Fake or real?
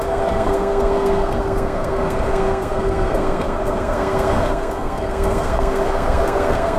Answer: fake